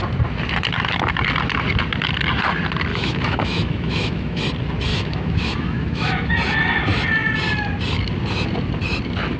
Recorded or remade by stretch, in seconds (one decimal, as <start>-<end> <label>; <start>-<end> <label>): 0.0-2.9 recorded; 2.9-4.4 remade; 4.4-4.9 recorded; 4.9-6.3 remade; 6.3-9.4 recorded

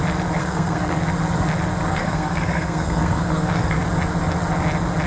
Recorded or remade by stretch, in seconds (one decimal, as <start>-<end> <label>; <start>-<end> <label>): 0.0-0.4 recorded; 0.4-1.0 remade; 1.0-1.9 recorded; 1.9-3.8 remade; 3.8-5.1 recorded

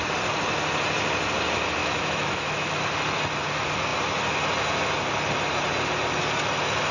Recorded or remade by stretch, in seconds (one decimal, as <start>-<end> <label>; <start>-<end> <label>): 0.0-1.8 recorded; 1.8-2.7 remade; 2.7-6.9 recorded

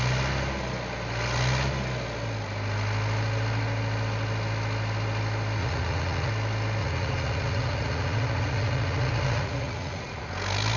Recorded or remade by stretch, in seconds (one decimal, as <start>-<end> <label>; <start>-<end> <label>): 0.0-5.6 recorded; 5.6-6.3 remade; 6.3-6.8 recorded; 6.8-10.3 remade; 10.3-10.8 recorded

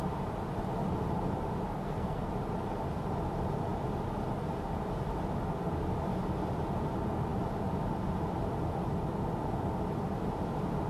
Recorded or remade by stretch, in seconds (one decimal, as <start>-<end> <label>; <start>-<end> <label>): 0.0-1.8 recorded; 1.8-2.3 remade; 2.3-10.9 recorded